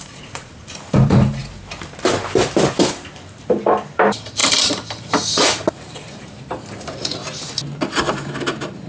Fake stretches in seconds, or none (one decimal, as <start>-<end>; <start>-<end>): 0.0-1.4; 2.8-7.2

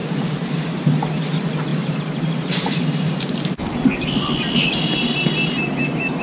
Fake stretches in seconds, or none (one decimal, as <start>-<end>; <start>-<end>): 1.7-3.2

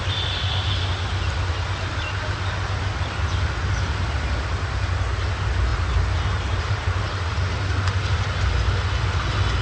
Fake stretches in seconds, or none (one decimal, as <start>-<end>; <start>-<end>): 5.7-7.4

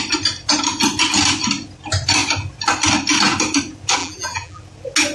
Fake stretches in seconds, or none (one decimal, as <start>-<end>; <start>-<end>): 4.0-4.6

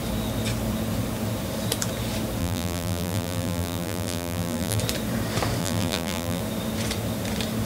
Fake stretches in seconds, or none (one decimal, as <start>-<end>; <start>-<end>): 2.4-4.8; 5.6-6.4

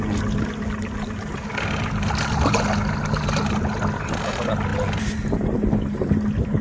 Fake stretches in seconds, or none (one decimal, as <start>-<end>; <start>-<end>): none